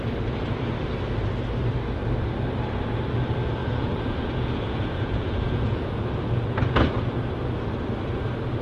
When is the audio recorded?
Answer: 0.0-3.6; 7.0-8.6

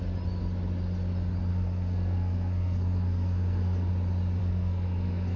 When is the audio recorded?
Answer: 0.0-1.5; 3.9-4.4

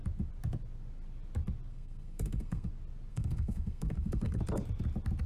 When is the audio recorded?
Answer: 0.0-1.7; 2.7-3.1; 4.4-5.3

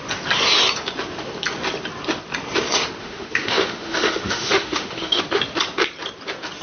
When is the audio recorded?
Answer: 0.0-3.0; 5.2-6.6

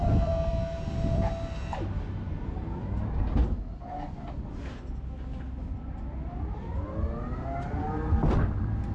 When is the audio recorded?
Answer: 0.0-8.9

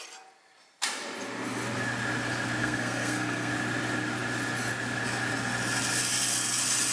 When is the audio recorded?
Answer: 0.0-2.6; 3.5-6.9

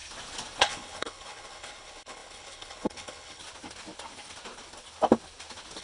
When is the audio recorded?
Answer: 0.0-0.6; 3.4-5.8

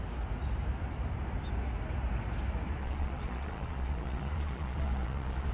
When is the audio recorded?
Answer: 0.0-2.8